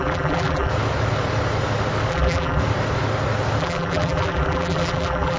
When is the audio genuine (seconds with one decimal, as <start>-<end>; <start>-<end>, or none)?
0.7-2.1; 2.6-3.6